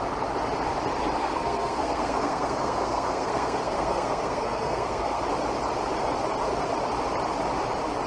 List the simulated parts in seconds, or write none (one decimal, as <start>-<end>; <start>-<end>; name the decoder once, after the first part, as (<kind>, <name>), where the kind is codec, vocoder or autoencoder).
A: 1.2-5.2 (codec, SNAC)